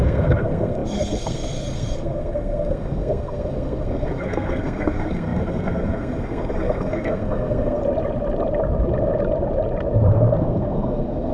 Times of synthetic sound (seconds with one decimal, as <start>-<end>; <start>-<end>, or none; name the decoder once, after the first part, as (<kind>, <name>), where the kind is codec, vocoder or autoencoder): 0.0-7.8 (codec, SNAC); 10.4-11.3